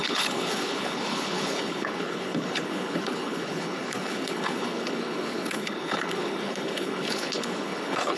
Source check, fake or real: fake